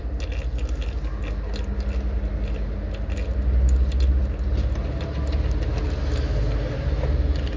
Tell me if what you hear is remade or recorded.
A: recorded